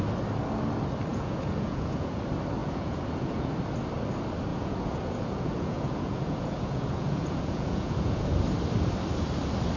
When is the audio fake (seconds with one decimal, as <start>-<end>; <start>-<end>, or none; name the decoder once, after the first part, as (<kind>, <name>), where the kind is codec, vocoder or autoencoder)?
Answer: 1.1-2.2 (vocoder, Vocos); 2.6-3.5; 4.5-8.2

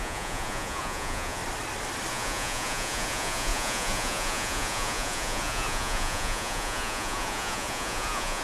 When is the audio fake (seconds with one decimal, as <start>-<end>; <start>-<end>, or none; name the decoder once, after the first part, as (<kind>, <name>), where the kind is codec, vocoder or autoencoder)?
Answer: 0.0-1.4 (vocoder, Vocos); 2.1-8.4

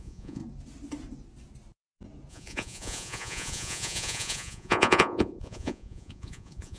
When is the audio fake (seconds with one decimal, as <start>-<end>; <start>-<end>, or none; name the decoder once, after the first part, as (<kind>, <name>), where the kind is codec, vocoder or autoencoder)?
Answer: 0.0-0.4 (vocoder, Vocos); 2.3-6.8

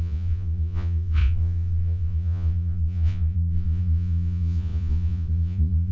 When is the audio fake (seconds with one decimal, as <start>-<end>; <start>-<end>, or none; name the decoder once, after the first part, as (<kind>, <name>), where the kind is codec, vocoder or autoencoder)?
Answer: 0.0-5.9 (vocoder, Vocos)

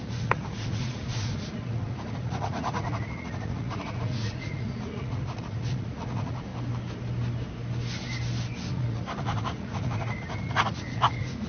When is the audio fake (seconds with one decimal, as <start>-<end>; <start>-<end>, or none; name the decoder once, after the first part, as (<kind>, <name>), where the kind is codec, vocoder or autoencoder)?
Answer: 0.0-6.5 (vocoder, Vocos); 8.7-11.5

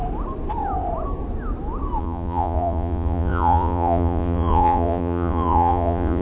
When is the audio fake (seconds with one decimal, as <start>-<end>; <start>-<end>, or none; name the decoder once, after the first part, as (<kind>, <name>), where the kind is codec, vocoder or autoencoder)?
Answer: 2.0-6.2 (vocoder, Vocos)

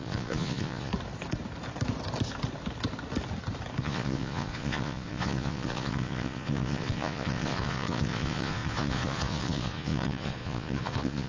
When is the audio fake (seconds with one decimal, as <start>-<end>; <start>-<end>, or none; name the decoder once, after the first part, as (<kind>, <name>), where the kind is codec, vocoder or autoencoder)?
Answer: 0.0-0.9 (vocoder, Vocos); 3.8-11.3